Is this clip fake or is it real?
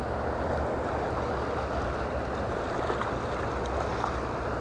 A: real